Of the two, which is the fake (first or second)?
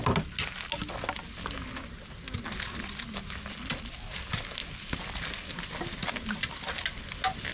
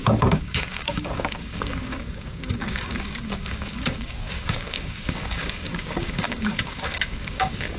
second